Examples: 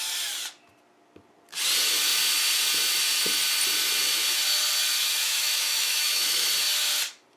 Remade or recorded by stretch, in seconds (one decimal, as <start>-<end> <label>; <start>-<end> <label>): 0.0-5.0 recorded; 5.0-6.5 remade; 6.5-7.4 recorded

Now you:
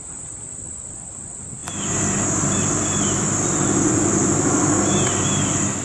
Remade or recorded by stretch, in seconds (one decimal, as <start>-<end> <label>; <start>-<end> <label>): 0.0-5.8 recorded

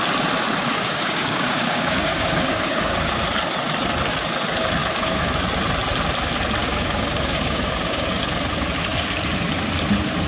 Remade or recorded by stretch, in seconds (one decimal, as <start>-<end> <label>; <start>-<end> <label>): 0.0-0.7 recorded; 0.7-3.1 remade; 3.1-4.8 recorded; 4.8-5.3 remade; 5.3-6.6 recorded; 6.6-8.2 remade; 8.2-10.3 recorded